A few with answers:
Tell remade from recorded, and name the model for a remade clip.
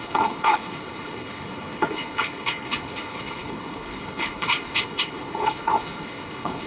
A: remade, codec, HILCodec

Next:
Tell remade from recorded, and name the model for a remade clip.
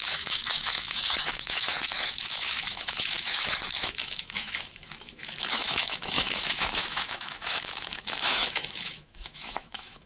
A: remade, autoencoder, DAC-VAE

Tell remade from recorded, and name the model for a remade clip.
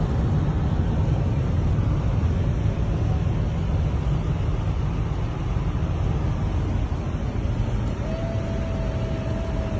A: recorded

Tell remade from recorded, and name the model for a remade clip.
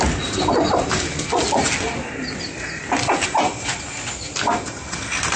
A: recorded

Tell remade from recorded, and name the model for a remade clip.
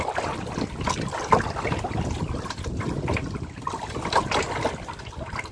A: recorded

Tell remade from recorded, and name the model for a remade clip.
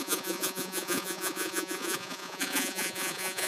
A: remade, vocoder, Vocos